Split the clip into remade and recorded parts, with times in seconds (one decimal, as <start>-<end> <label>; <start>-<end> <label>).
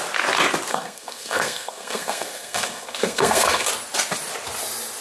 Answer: 0.0-0.7 recorded; 0.7-3.7 remade; 3.7-5.0 recorded